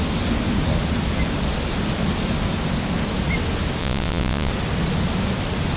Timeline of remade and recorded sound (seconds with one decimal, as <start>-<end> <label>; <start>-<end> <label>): 0.0-3.8 recorded; 3.8-4.5 remade; 4.5-5.8 recorded